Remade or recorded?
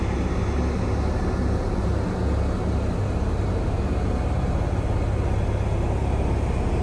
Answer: recorded